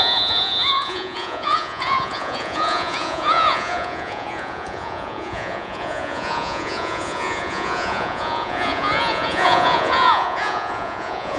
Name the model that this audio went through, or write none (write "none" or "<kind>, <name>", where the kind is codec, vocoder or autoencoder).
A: vocoder, Vocos